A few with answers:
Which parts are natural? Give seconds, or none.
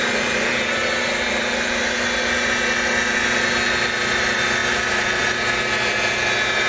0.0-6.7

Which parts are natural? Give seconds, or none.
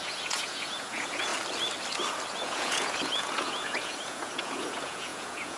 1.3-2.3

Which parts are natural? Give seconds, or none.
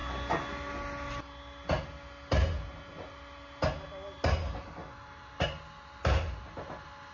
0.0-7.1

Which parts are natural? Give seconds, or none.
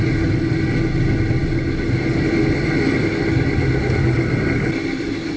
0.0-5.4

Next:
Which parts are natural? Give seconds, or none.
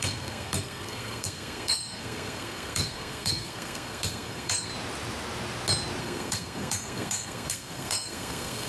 4.7-6.0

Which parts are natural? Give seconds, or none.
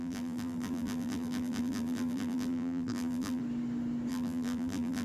3.4-4.1